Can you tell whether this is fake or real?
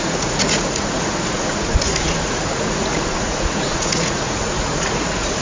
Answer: fake